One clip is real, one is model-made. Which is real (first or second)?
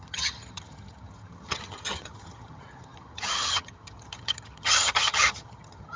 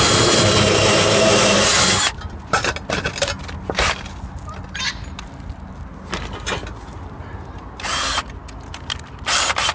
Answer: second